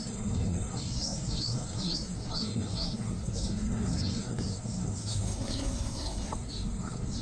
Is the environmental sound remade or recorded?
remade